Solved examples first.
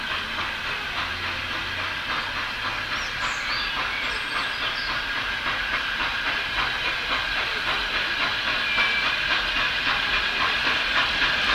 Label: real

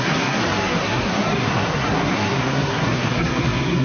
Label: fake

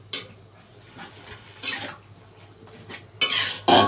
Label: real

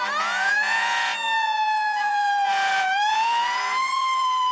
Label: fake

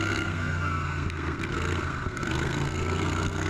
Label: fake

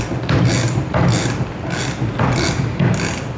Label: real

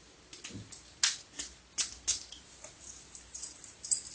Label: real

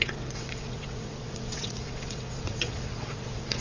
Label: fake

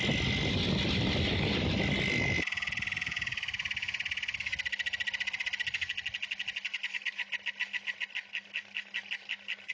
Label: real